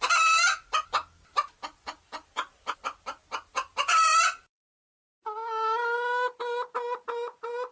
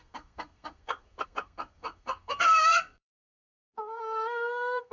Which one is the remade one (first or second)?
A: second